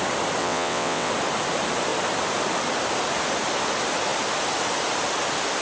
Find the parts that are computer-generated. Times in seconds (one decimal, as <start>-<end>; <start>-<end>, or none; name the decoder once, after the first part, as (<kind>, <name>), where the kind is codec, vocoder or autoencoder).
0.4-1.1 (vocoder, WaveNeXt)